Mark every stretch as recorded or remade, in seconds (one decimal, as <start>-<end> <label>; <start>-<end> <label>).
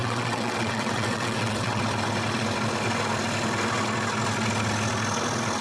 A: 0.0-1.8 remade; 1.8-5.6 recorded